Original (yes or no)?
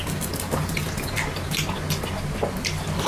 yes